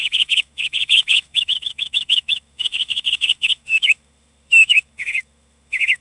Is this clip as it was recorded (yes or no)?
no